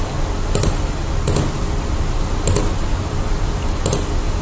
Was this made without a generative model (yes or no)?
yes